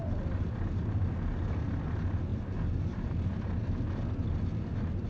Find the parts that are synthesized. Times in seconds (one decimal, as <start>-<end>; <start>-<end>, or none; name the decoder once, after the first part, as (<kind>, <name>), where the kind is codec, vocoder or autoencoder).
none